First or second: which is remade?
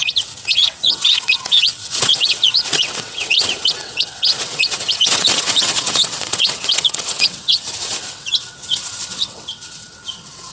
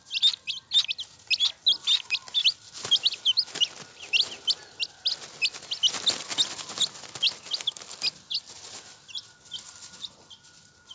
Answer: first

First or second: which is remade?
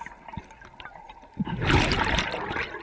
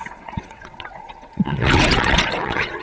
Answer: second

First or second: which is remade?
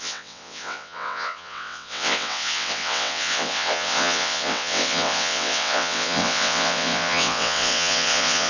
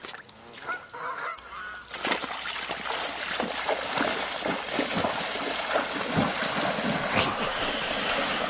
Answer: first